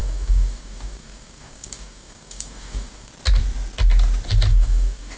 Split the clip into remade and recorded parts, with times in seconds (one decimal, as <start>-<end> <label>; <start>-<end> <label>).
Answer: 0.0-3.1 remade; 3.1-4.5 recorded; 4.5-5.2 remade